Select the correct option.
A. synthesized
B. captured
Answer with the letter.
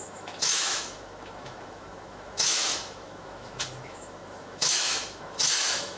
A